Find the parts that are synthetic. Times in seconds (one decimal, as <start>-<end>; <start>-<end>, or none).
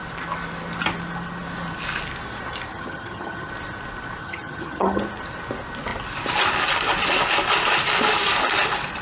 2.7-3.5; 4.2-5.0